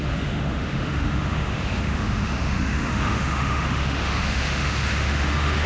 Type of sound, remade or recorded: remade